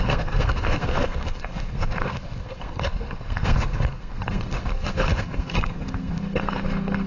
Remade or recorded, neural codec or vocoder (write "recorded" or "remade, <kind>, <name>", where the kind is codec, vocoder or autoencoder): remade, codec, SNAC